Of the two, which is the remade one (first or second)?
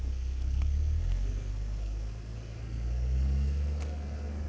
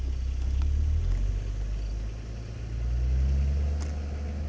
first